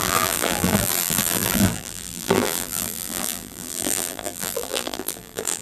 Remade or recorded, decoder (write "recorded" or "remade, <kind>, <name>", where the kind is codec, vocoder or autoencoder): remade, vocoder, BigVGAN v2